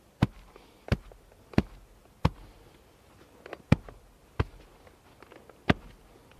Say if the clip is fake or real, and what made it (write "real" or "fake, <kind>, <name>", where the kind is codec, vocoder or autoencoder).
real